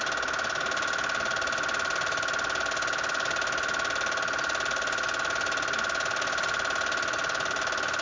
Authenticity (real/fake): real